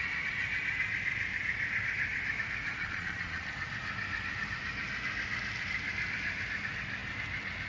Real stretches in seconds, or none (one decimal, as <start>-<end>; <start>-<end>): 0.0-2.8; 3.5-7.7